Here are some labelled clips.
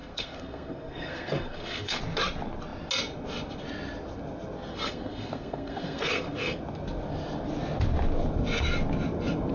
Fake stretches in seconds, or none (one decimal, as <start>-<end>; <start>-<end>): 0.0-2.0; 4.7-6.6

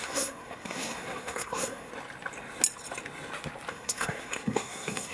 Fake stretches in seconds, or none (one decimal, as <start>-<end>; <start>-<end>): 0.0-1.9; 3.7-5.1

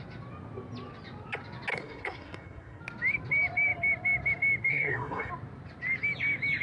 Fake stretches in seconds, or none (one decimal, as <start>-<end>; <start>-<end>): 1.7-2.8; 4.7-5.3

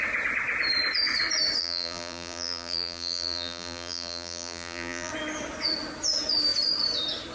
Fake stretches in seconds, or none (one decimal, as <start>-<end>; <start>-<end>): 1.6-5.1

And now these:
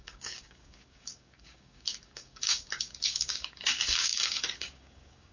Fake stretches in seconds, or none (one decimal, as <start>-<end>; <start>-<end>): 0.0-5.3

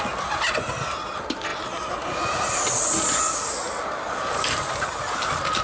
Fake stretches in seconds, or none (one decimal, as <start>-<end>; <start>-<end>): none

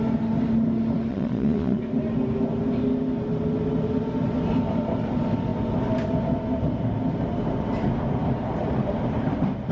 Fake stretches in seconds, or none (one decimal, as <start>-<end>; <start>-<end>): 1.1-1.8

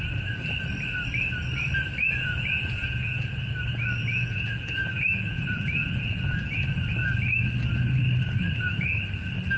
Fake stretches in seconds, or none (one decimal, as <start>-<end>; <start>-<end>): 2.0-3.3; 4.0-6.5